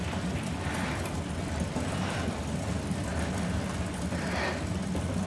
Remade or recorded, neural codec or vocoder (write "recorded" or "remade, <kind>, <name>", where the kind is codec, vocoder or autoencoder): recorded